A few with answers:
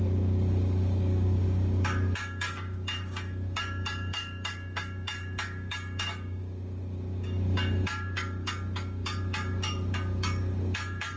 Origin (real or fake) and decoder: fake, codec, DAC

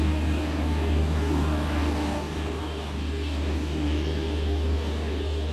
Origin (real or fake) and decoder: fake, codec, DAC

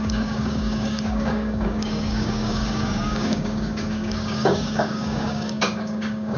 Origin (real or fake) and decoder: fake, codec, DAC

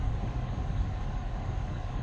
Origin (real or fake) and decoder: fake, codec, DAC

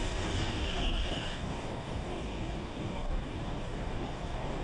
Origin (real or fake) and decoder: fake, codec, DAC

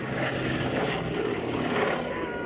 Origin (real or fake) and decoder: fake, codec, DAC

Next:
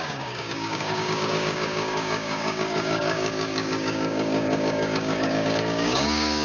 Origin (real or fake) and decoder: fake, codec, DAC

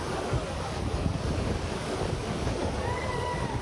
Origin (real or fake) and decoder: fake, codec, DAC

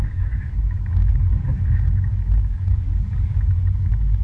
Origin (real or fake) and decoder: fake, codec, DAC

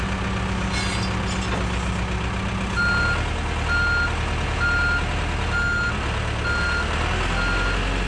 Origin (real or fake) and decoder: real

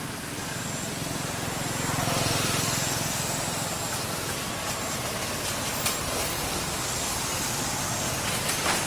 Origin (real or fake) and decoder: real